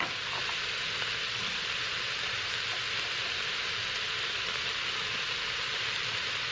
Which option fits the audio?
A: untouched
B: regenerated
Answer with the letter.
A